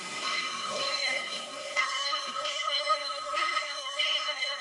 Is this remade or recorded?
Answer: remade